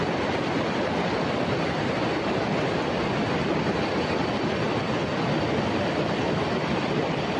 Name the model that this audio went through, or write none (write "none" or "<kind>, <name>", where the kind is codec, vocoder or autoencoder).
none